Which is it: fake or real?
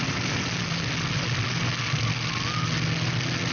real